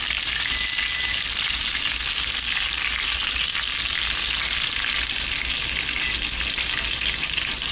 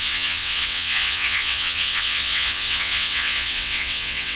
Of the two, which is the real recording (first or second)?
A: first